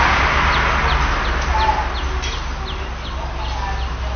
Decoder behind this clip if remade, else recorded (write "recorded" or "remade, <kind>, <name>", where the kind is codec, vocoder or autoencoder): recorded